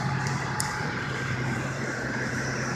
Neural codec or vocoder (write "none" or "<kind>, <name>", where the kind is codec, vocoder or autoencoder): vocoder, BigVGAN v2